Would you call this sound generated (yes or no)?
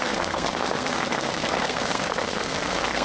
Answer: yes